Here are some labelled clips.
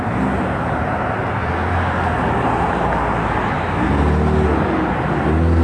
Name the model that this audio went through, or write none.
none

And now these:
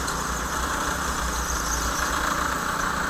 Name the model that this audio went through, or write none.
none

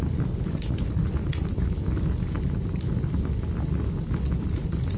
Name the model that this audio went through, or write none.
none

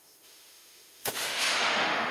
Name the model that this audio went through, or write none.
autoencoder, DAC-VAE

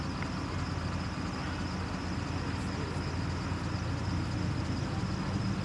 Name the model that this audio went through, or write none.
none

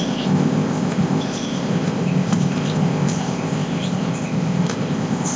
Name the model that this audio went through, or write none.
codec, ZipCodec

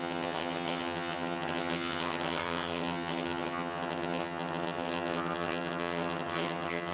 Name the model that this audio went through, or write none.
vocoder, HiFi-GAN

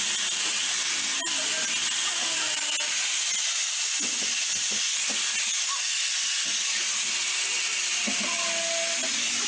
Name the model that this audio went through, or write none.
none